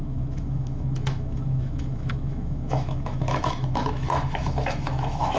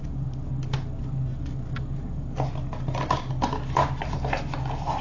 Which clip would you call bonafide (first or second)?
second